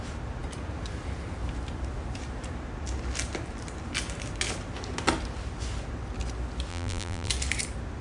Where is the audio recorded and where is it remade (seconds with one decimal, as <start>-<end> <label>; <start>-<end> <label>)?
0.0-6.7 recorded; 6.7-7.3 remade; 7.3-8.0 recorded